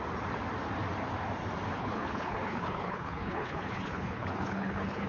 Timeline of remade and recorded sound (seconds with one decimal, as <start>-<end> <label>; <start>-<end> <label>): 0.0-1.8 recorded; 1.8-5.1 remade